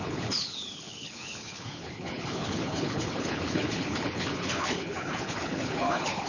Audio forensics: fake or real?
fake